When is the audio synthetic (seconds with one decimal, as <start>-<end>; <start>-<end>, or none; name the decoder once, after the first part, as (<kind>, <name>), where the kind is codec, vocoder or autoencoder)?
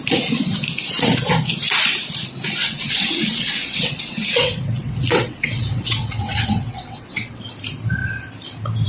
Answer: 2.6-7.4 (vocoder, WaveNeXt)